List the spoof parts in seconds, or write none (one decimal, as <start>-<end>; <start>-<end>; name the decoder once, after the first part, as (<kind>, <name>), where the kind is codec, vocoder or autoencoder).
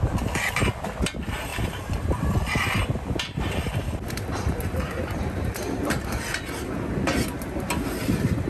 1.5-4.3 (vocoder, BigVGAN v2); 5.0-6.4